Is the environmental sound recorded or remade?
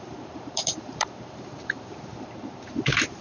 remade